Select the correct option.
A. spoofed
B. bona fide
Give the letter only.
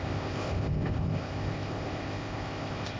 A